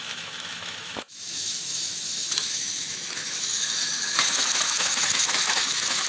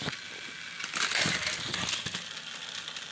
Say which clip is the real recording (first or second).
second